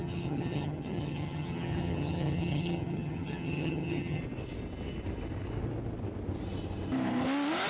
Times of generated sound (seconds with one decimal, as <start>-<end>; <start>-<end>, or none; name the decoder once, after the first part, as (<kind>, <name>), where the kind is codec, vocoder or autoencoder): 0.0-4.2 (vocoder, HiFi-GAN)